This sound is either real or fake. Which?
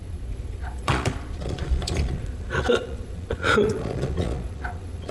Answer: fake